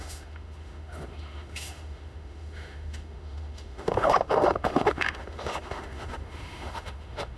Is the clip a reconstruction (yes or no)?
yes